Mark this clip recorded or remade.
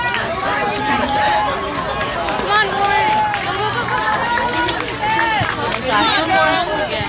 recorded